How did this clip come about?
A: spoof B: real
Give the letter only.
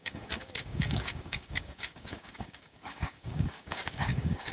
A